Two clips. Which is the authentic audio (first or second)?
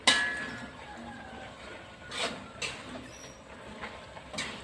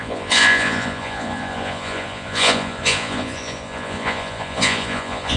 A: first